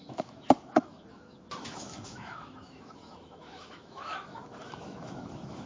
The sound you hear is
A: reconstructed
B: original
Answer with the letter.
A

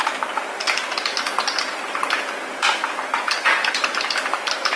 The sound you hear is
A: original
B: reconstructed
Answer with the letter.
A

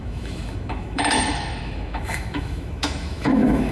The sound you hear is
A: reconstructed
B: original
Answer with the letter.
A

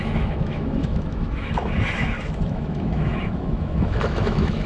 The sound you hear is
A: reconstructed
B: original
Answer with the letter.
A